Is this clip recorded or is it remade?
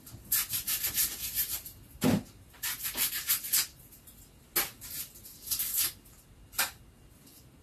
recorded